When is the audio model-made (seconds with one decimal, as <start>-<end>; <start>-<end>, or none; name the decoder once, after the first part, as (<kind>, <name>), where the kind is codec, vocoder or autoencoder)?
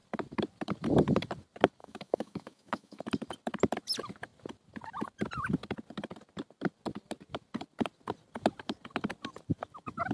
1.8-3.0 (autoencoder, DAC-VAE)